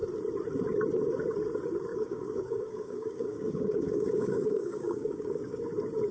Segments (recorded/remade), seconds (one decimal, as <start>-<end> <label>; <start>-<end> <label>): 0.0-1.9 recorded; 1.9-5.6 remade; 5.6-6.1 recorded